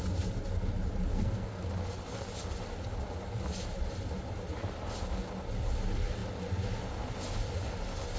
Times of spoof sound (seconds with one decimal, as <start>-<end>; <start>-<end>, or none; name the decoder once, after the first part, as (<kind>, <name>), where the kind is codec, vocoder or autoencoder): 1.1-1.7 (codec, SNAC)